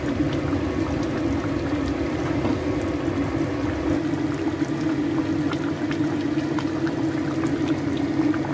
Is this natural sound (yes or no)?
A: yes